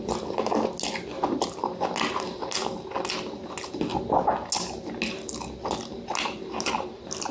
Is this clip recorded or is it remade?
recorded